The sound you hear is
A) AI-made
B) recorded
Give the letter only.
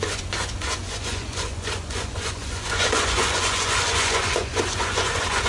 A